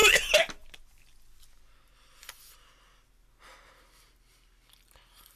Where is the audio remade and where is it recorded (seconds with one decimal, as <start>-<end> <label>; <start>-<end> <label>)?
0.0-5.4 recorded